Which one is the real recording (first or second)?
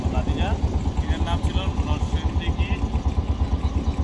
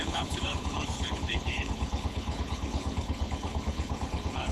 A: first